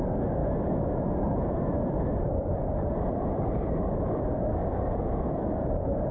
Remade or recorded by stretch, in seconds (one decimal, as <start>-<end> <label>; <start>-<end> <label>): 0.0-0.4 remade; 0.4-3.0 recorded; 3.0-4.6 remade; 4.6-5.2 recorded; 5.2-6.1 remade